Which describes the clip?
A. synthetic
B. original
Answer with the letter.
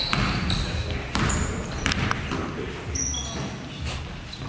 B